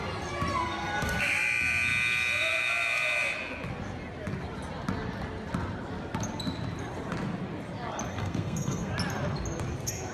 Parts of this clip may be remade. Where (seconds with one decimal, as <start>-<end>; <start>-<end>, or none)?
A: 0.5-1.2; 8.1-8.9